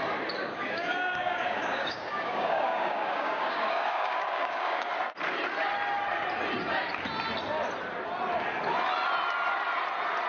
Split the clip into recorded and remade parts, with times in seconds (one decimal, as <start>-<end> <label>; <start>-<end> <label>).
0.0-0.4 recorded; 0.4-4.9 remade; 4.9-10.3 recorded